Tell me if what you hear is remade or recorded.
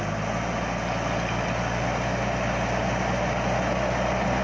recorded